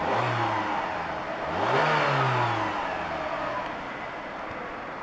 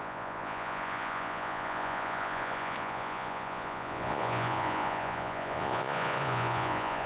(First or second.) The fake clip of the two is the second